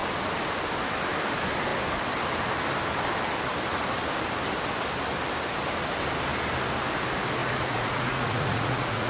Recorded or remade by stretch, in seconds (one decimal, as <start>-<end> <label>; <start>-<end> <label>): 0.0-7.4 recorded; 7.4-9.1 remade